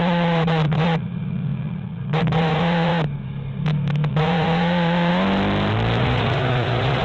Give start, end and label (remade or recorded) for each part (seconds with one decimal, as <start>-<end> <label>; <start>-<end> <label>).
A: 0.0-2.9 remade; 2.9-4.1 recorded; 4.1-5.1 remade; 5.1-6.0 recorded; 6.0-7.0 remade